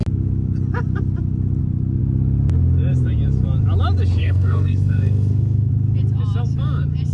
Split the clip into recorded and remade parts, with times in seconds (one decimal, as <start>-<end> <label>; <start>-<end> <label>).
0.0-4.2 recorded; 4.2-5.7 remade; 5.7-7.1 recorded